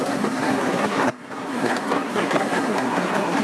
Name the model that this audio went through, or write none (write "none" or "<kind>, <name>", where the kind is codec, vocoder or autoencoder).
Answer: codec, SNAC